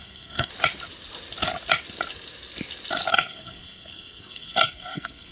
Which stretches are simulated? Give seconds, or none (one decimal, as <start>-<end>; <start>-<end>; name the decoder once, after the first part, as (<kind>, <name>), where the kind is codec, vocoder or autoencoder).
0.0-0.5 (codec, SNAC); 3.1-5.3